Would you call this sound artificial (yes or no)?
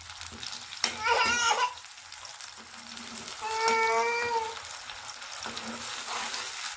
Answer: no